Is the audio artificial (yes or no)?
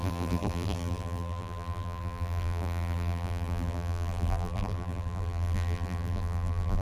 yes